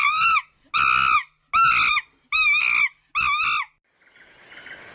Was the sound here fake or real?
real